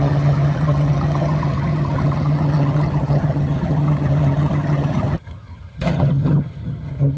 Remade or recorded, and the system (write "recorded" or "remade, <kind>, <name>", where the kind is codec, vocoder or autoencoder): remade, vocoder, HiFi-GAN